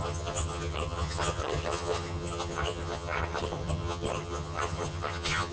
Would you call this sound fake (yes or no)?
yes